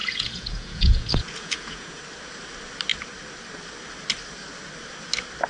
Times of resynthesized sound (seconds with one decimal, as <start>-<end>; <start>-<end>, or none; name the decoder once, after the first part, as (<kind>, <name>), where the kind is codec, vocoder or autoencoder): 0.0-2.0 (vocoder, Vocos)